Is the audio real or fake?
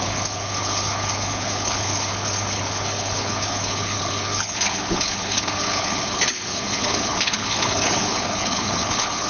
fake